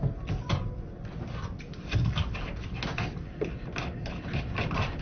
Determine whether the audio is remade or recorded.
recorded